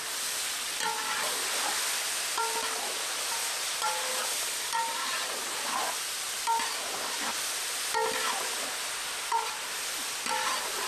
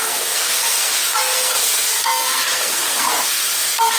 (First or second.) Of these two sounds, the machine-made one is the second